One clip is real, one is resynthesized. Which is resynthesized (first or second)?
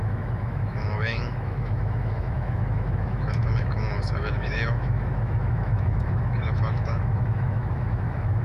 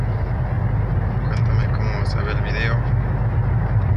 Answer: first